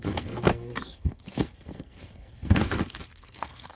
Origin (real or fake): fake